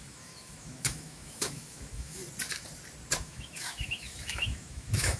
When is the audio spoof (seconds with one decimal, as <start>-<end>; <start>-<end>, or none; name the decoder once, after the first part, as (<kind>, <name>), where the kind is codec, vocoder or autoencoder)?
0.0-2.2 (autoencoder, DAC-VAE); 3.2-5.2